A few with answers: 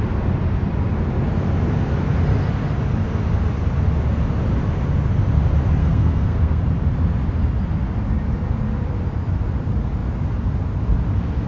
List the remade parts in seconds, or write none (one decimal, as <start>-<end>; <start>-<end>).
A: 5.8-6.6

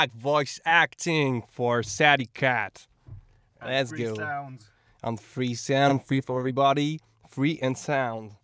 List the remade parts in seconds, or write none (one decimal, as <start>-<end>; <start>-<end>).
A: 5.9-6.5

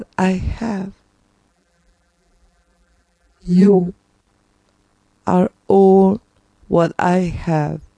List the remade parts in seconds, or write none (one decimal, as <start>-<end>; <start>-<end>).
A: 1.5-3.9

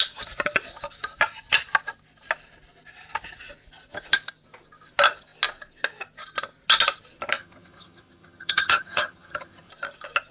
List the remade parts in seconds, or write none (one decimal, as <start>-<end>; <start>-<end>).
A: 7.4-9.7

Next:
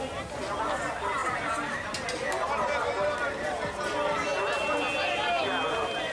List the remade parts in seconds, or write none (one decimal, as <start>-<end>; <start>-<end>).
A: none

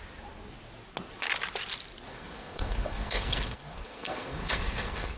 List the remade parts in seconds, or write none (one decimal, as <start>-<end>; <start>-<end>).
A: 2.1-5.2

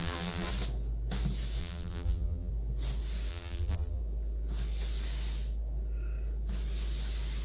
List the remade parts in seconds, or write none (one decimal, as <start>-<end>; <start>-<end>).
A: 0.0-0.5; 1.6-2.5; 3.3-4.0

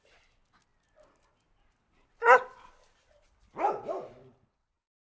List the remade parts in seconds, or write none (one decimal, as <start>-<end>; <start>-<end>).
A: none